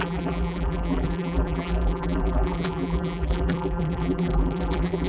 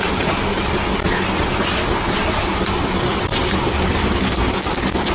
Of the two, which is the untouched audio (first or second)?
second